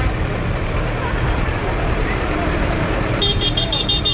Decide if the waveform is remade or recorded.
remade